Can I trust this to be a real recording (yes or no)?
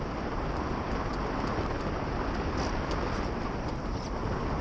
yes